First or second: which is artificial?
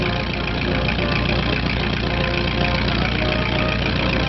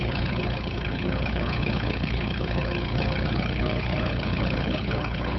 second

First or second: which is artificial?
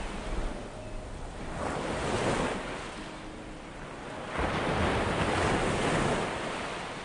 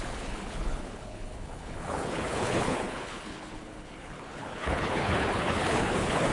second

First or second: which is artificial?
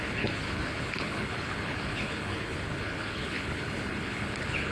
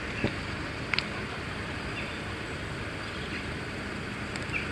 first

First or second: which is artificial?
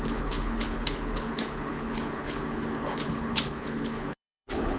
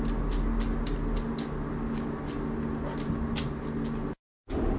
first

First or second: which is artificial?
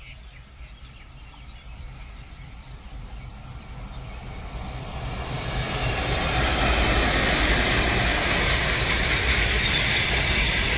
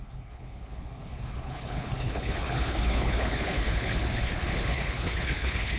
second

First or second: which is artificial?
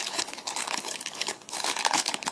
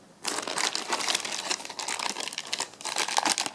first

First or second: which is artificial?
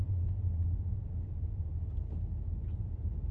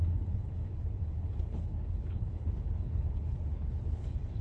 second